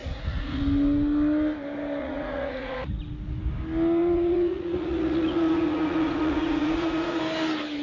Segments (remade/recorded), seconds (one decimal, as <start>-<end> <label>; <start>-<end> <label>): 0.0-0.6 remade; 0.6-2.0 recorded; 2.0-3.0 remade; 3.0-4.0 recorded; 4.0-7.2 remade; 7.2-7.8 recorded